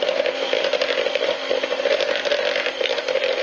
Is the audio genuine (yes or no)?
yes